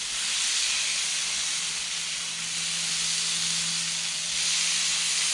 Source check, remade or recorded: recorded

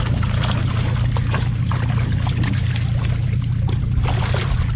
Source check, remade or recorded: recorded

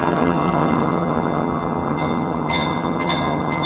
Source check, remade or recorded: remade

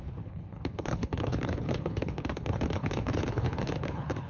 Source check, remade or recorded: remade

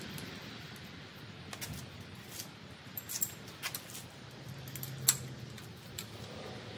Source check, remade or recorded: recorded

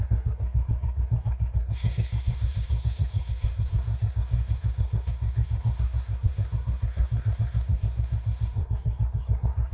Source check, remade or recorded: remade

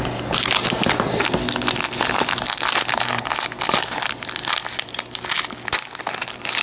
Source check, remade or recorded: recorded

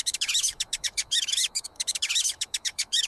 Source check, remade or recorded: remade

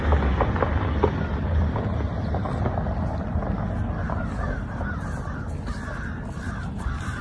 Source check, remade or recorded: recorded